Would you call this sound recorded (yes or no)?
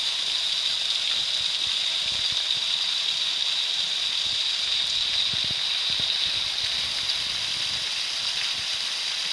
yes